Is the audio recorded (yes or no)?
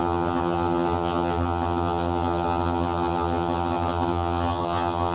no